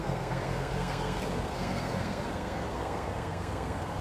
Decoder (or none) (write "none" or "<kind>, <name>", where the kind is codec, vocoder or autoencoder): codec, SNAC